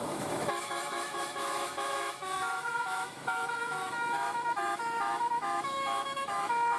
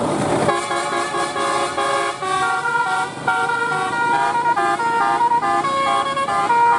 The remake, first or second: first